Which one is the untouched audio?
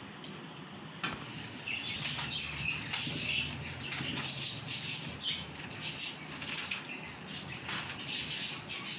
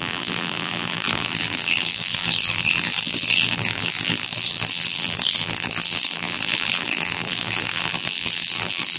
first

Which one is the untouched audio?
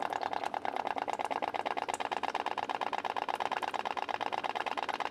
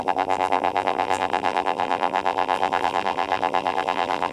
first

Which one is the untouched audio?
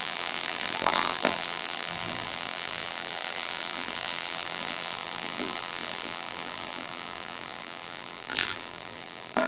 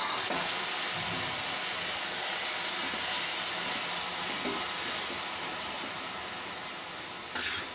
second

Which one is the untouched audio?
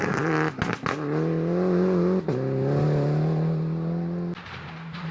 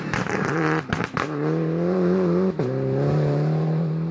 first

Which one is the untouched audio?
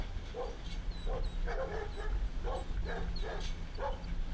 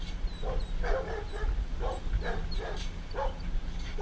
first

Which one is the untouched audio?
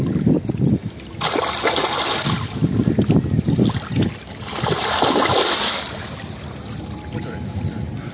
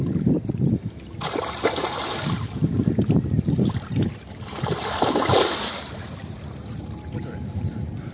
first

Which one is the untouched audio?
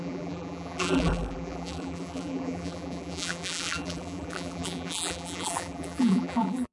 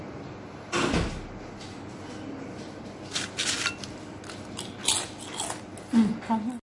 second